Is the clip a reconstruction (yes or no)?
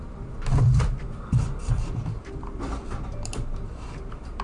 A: yes